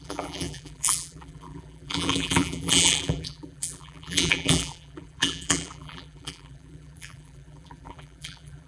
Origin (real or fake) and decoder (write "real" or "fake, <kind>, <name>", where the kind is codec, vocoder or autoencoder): fake, vocoder, BigVGAN v2